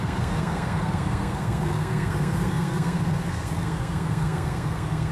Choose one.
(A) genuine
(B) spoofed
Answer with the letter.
B